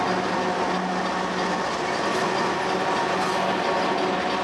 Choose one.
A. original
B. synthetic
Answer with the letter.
A